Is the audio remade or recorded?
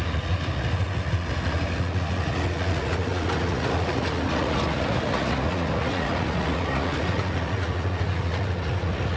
remade